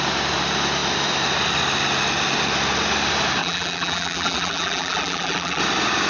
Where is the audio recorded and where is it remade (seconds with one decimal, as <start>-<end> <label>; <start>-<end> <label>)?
0.0-3.4 recorded; 3.4-5.6 remade; 5.6-6.1 recorded